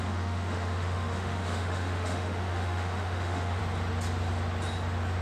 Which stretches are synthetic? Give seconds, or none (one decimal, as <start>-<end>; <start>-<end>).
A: 0.0-3.6